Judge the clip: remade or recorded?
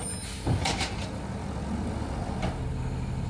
recorded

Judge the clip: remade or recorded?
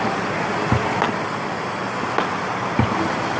recorded